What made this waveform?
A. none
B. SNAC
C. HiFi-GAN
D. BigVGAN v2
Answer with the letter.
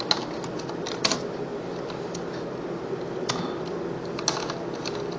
A